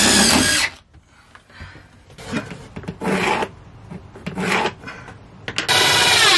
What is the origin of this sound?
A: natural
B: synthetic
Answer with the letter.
A